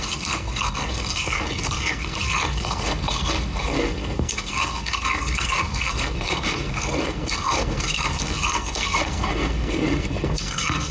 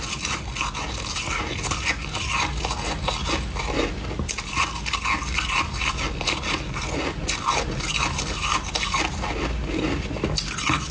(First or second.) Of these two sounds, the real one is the second